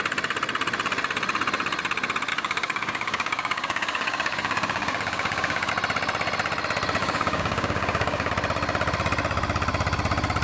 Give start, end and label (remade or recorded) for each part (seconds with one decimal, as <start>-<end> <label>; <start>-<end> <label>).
0.0-2.3 recorded; 2.3-5.7 remade; 5.7-7.0 recorded; 7.0-8.3 remade; 8.3-10.4 recorded